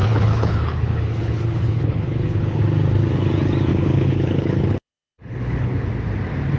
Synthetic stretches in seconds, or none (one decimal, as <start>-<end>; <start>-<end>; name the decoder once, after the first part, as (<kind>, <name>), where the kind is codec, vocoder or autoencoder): 0.0-2.6 (codec, HILCodec); 3.7-5.9